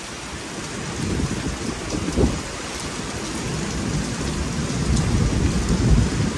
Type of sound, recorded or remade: recorded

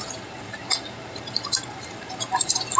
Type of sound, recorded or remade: remade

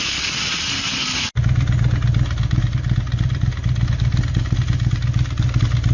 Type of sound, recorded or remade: recorded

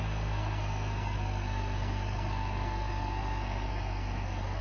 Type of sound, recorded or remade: remade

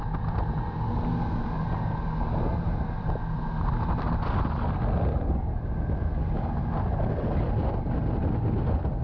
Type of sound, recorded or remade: recorded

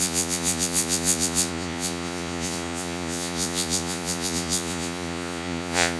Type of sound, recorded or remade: remade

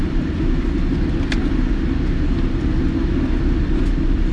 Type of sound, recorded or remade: recorded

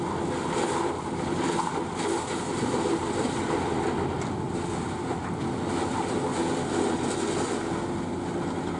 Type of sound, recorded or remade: recorded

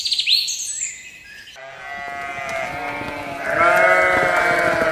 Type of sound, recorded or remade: recorded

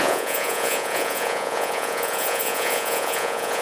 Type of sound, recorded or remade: remade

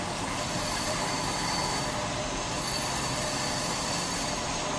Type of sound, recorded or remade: remade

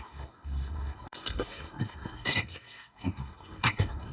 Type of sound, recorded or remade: remade